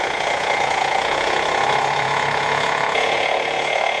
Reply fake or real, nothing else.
fake